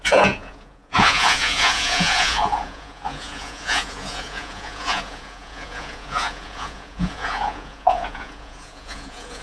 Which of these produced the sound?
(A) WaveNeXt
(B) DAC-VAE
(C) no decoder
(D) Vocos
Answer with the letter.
D